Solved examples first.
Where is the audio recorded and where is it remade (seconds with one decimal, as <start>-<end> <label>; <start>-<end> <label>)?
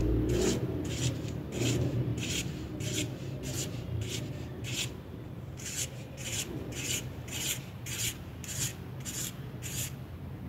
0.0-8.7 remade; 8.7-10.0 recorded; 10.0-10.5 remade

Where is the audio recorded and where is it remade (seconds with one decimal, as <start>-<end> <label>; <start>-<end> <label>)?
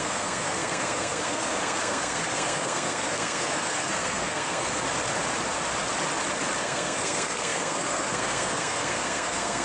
0.0-4.8 remade; 4.8-6.6 recorded; 6.6-9.6 remade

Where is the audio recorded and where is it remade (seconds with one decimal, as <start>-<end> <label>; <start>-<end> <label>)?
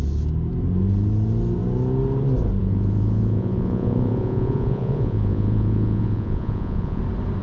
0.0-2.6 recorded; 2.6-7.0 remade; 7.0-7.4 recorded